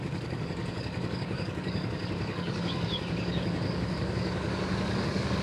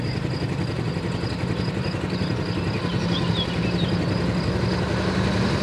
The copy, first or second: first